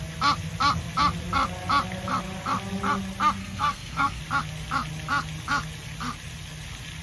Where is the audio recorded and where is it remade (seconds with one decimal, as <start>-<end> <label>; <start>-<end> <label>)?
0.0-3.4 recorded; 3.4-4.2 remade; 4.2-7.0 recorded